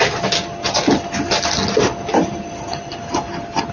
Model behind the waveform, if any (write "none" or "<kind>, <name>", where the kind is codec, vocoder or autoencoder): none